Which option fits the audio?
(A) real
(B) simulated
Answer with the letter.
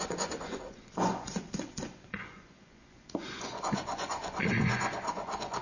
B